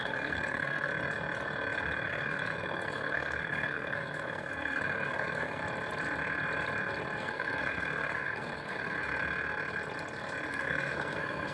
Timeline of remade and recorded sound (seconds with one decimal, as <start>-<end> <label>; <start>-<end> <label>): 0.0-0.9 remade; 0.9-2.0 recorded; 2.0-5.6 remade; 5.6-7.2 recorded; 7.2-9.1 remade; 9.1-10.5 recorded; 10.5-11.5 remade